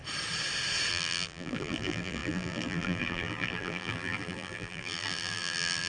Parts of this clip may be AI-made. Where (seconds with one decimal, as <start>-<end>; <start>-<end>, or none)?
0.9-5.9